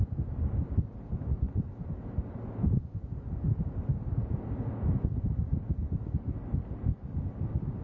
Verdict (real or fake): real